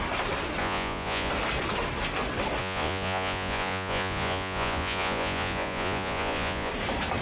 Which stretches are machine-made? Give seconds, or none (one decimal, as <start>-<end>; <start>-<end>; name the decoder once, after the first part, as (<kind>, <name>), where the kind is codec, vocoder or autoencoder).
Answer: 0.6-1.3 (vocoder, Vocos); 2.6-6.7